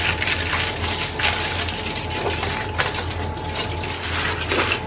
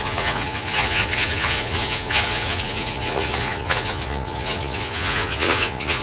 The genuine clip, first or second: first